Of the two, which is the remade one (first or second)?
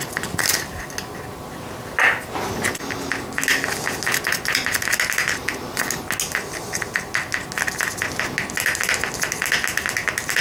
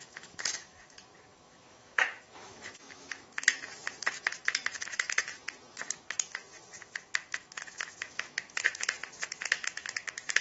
second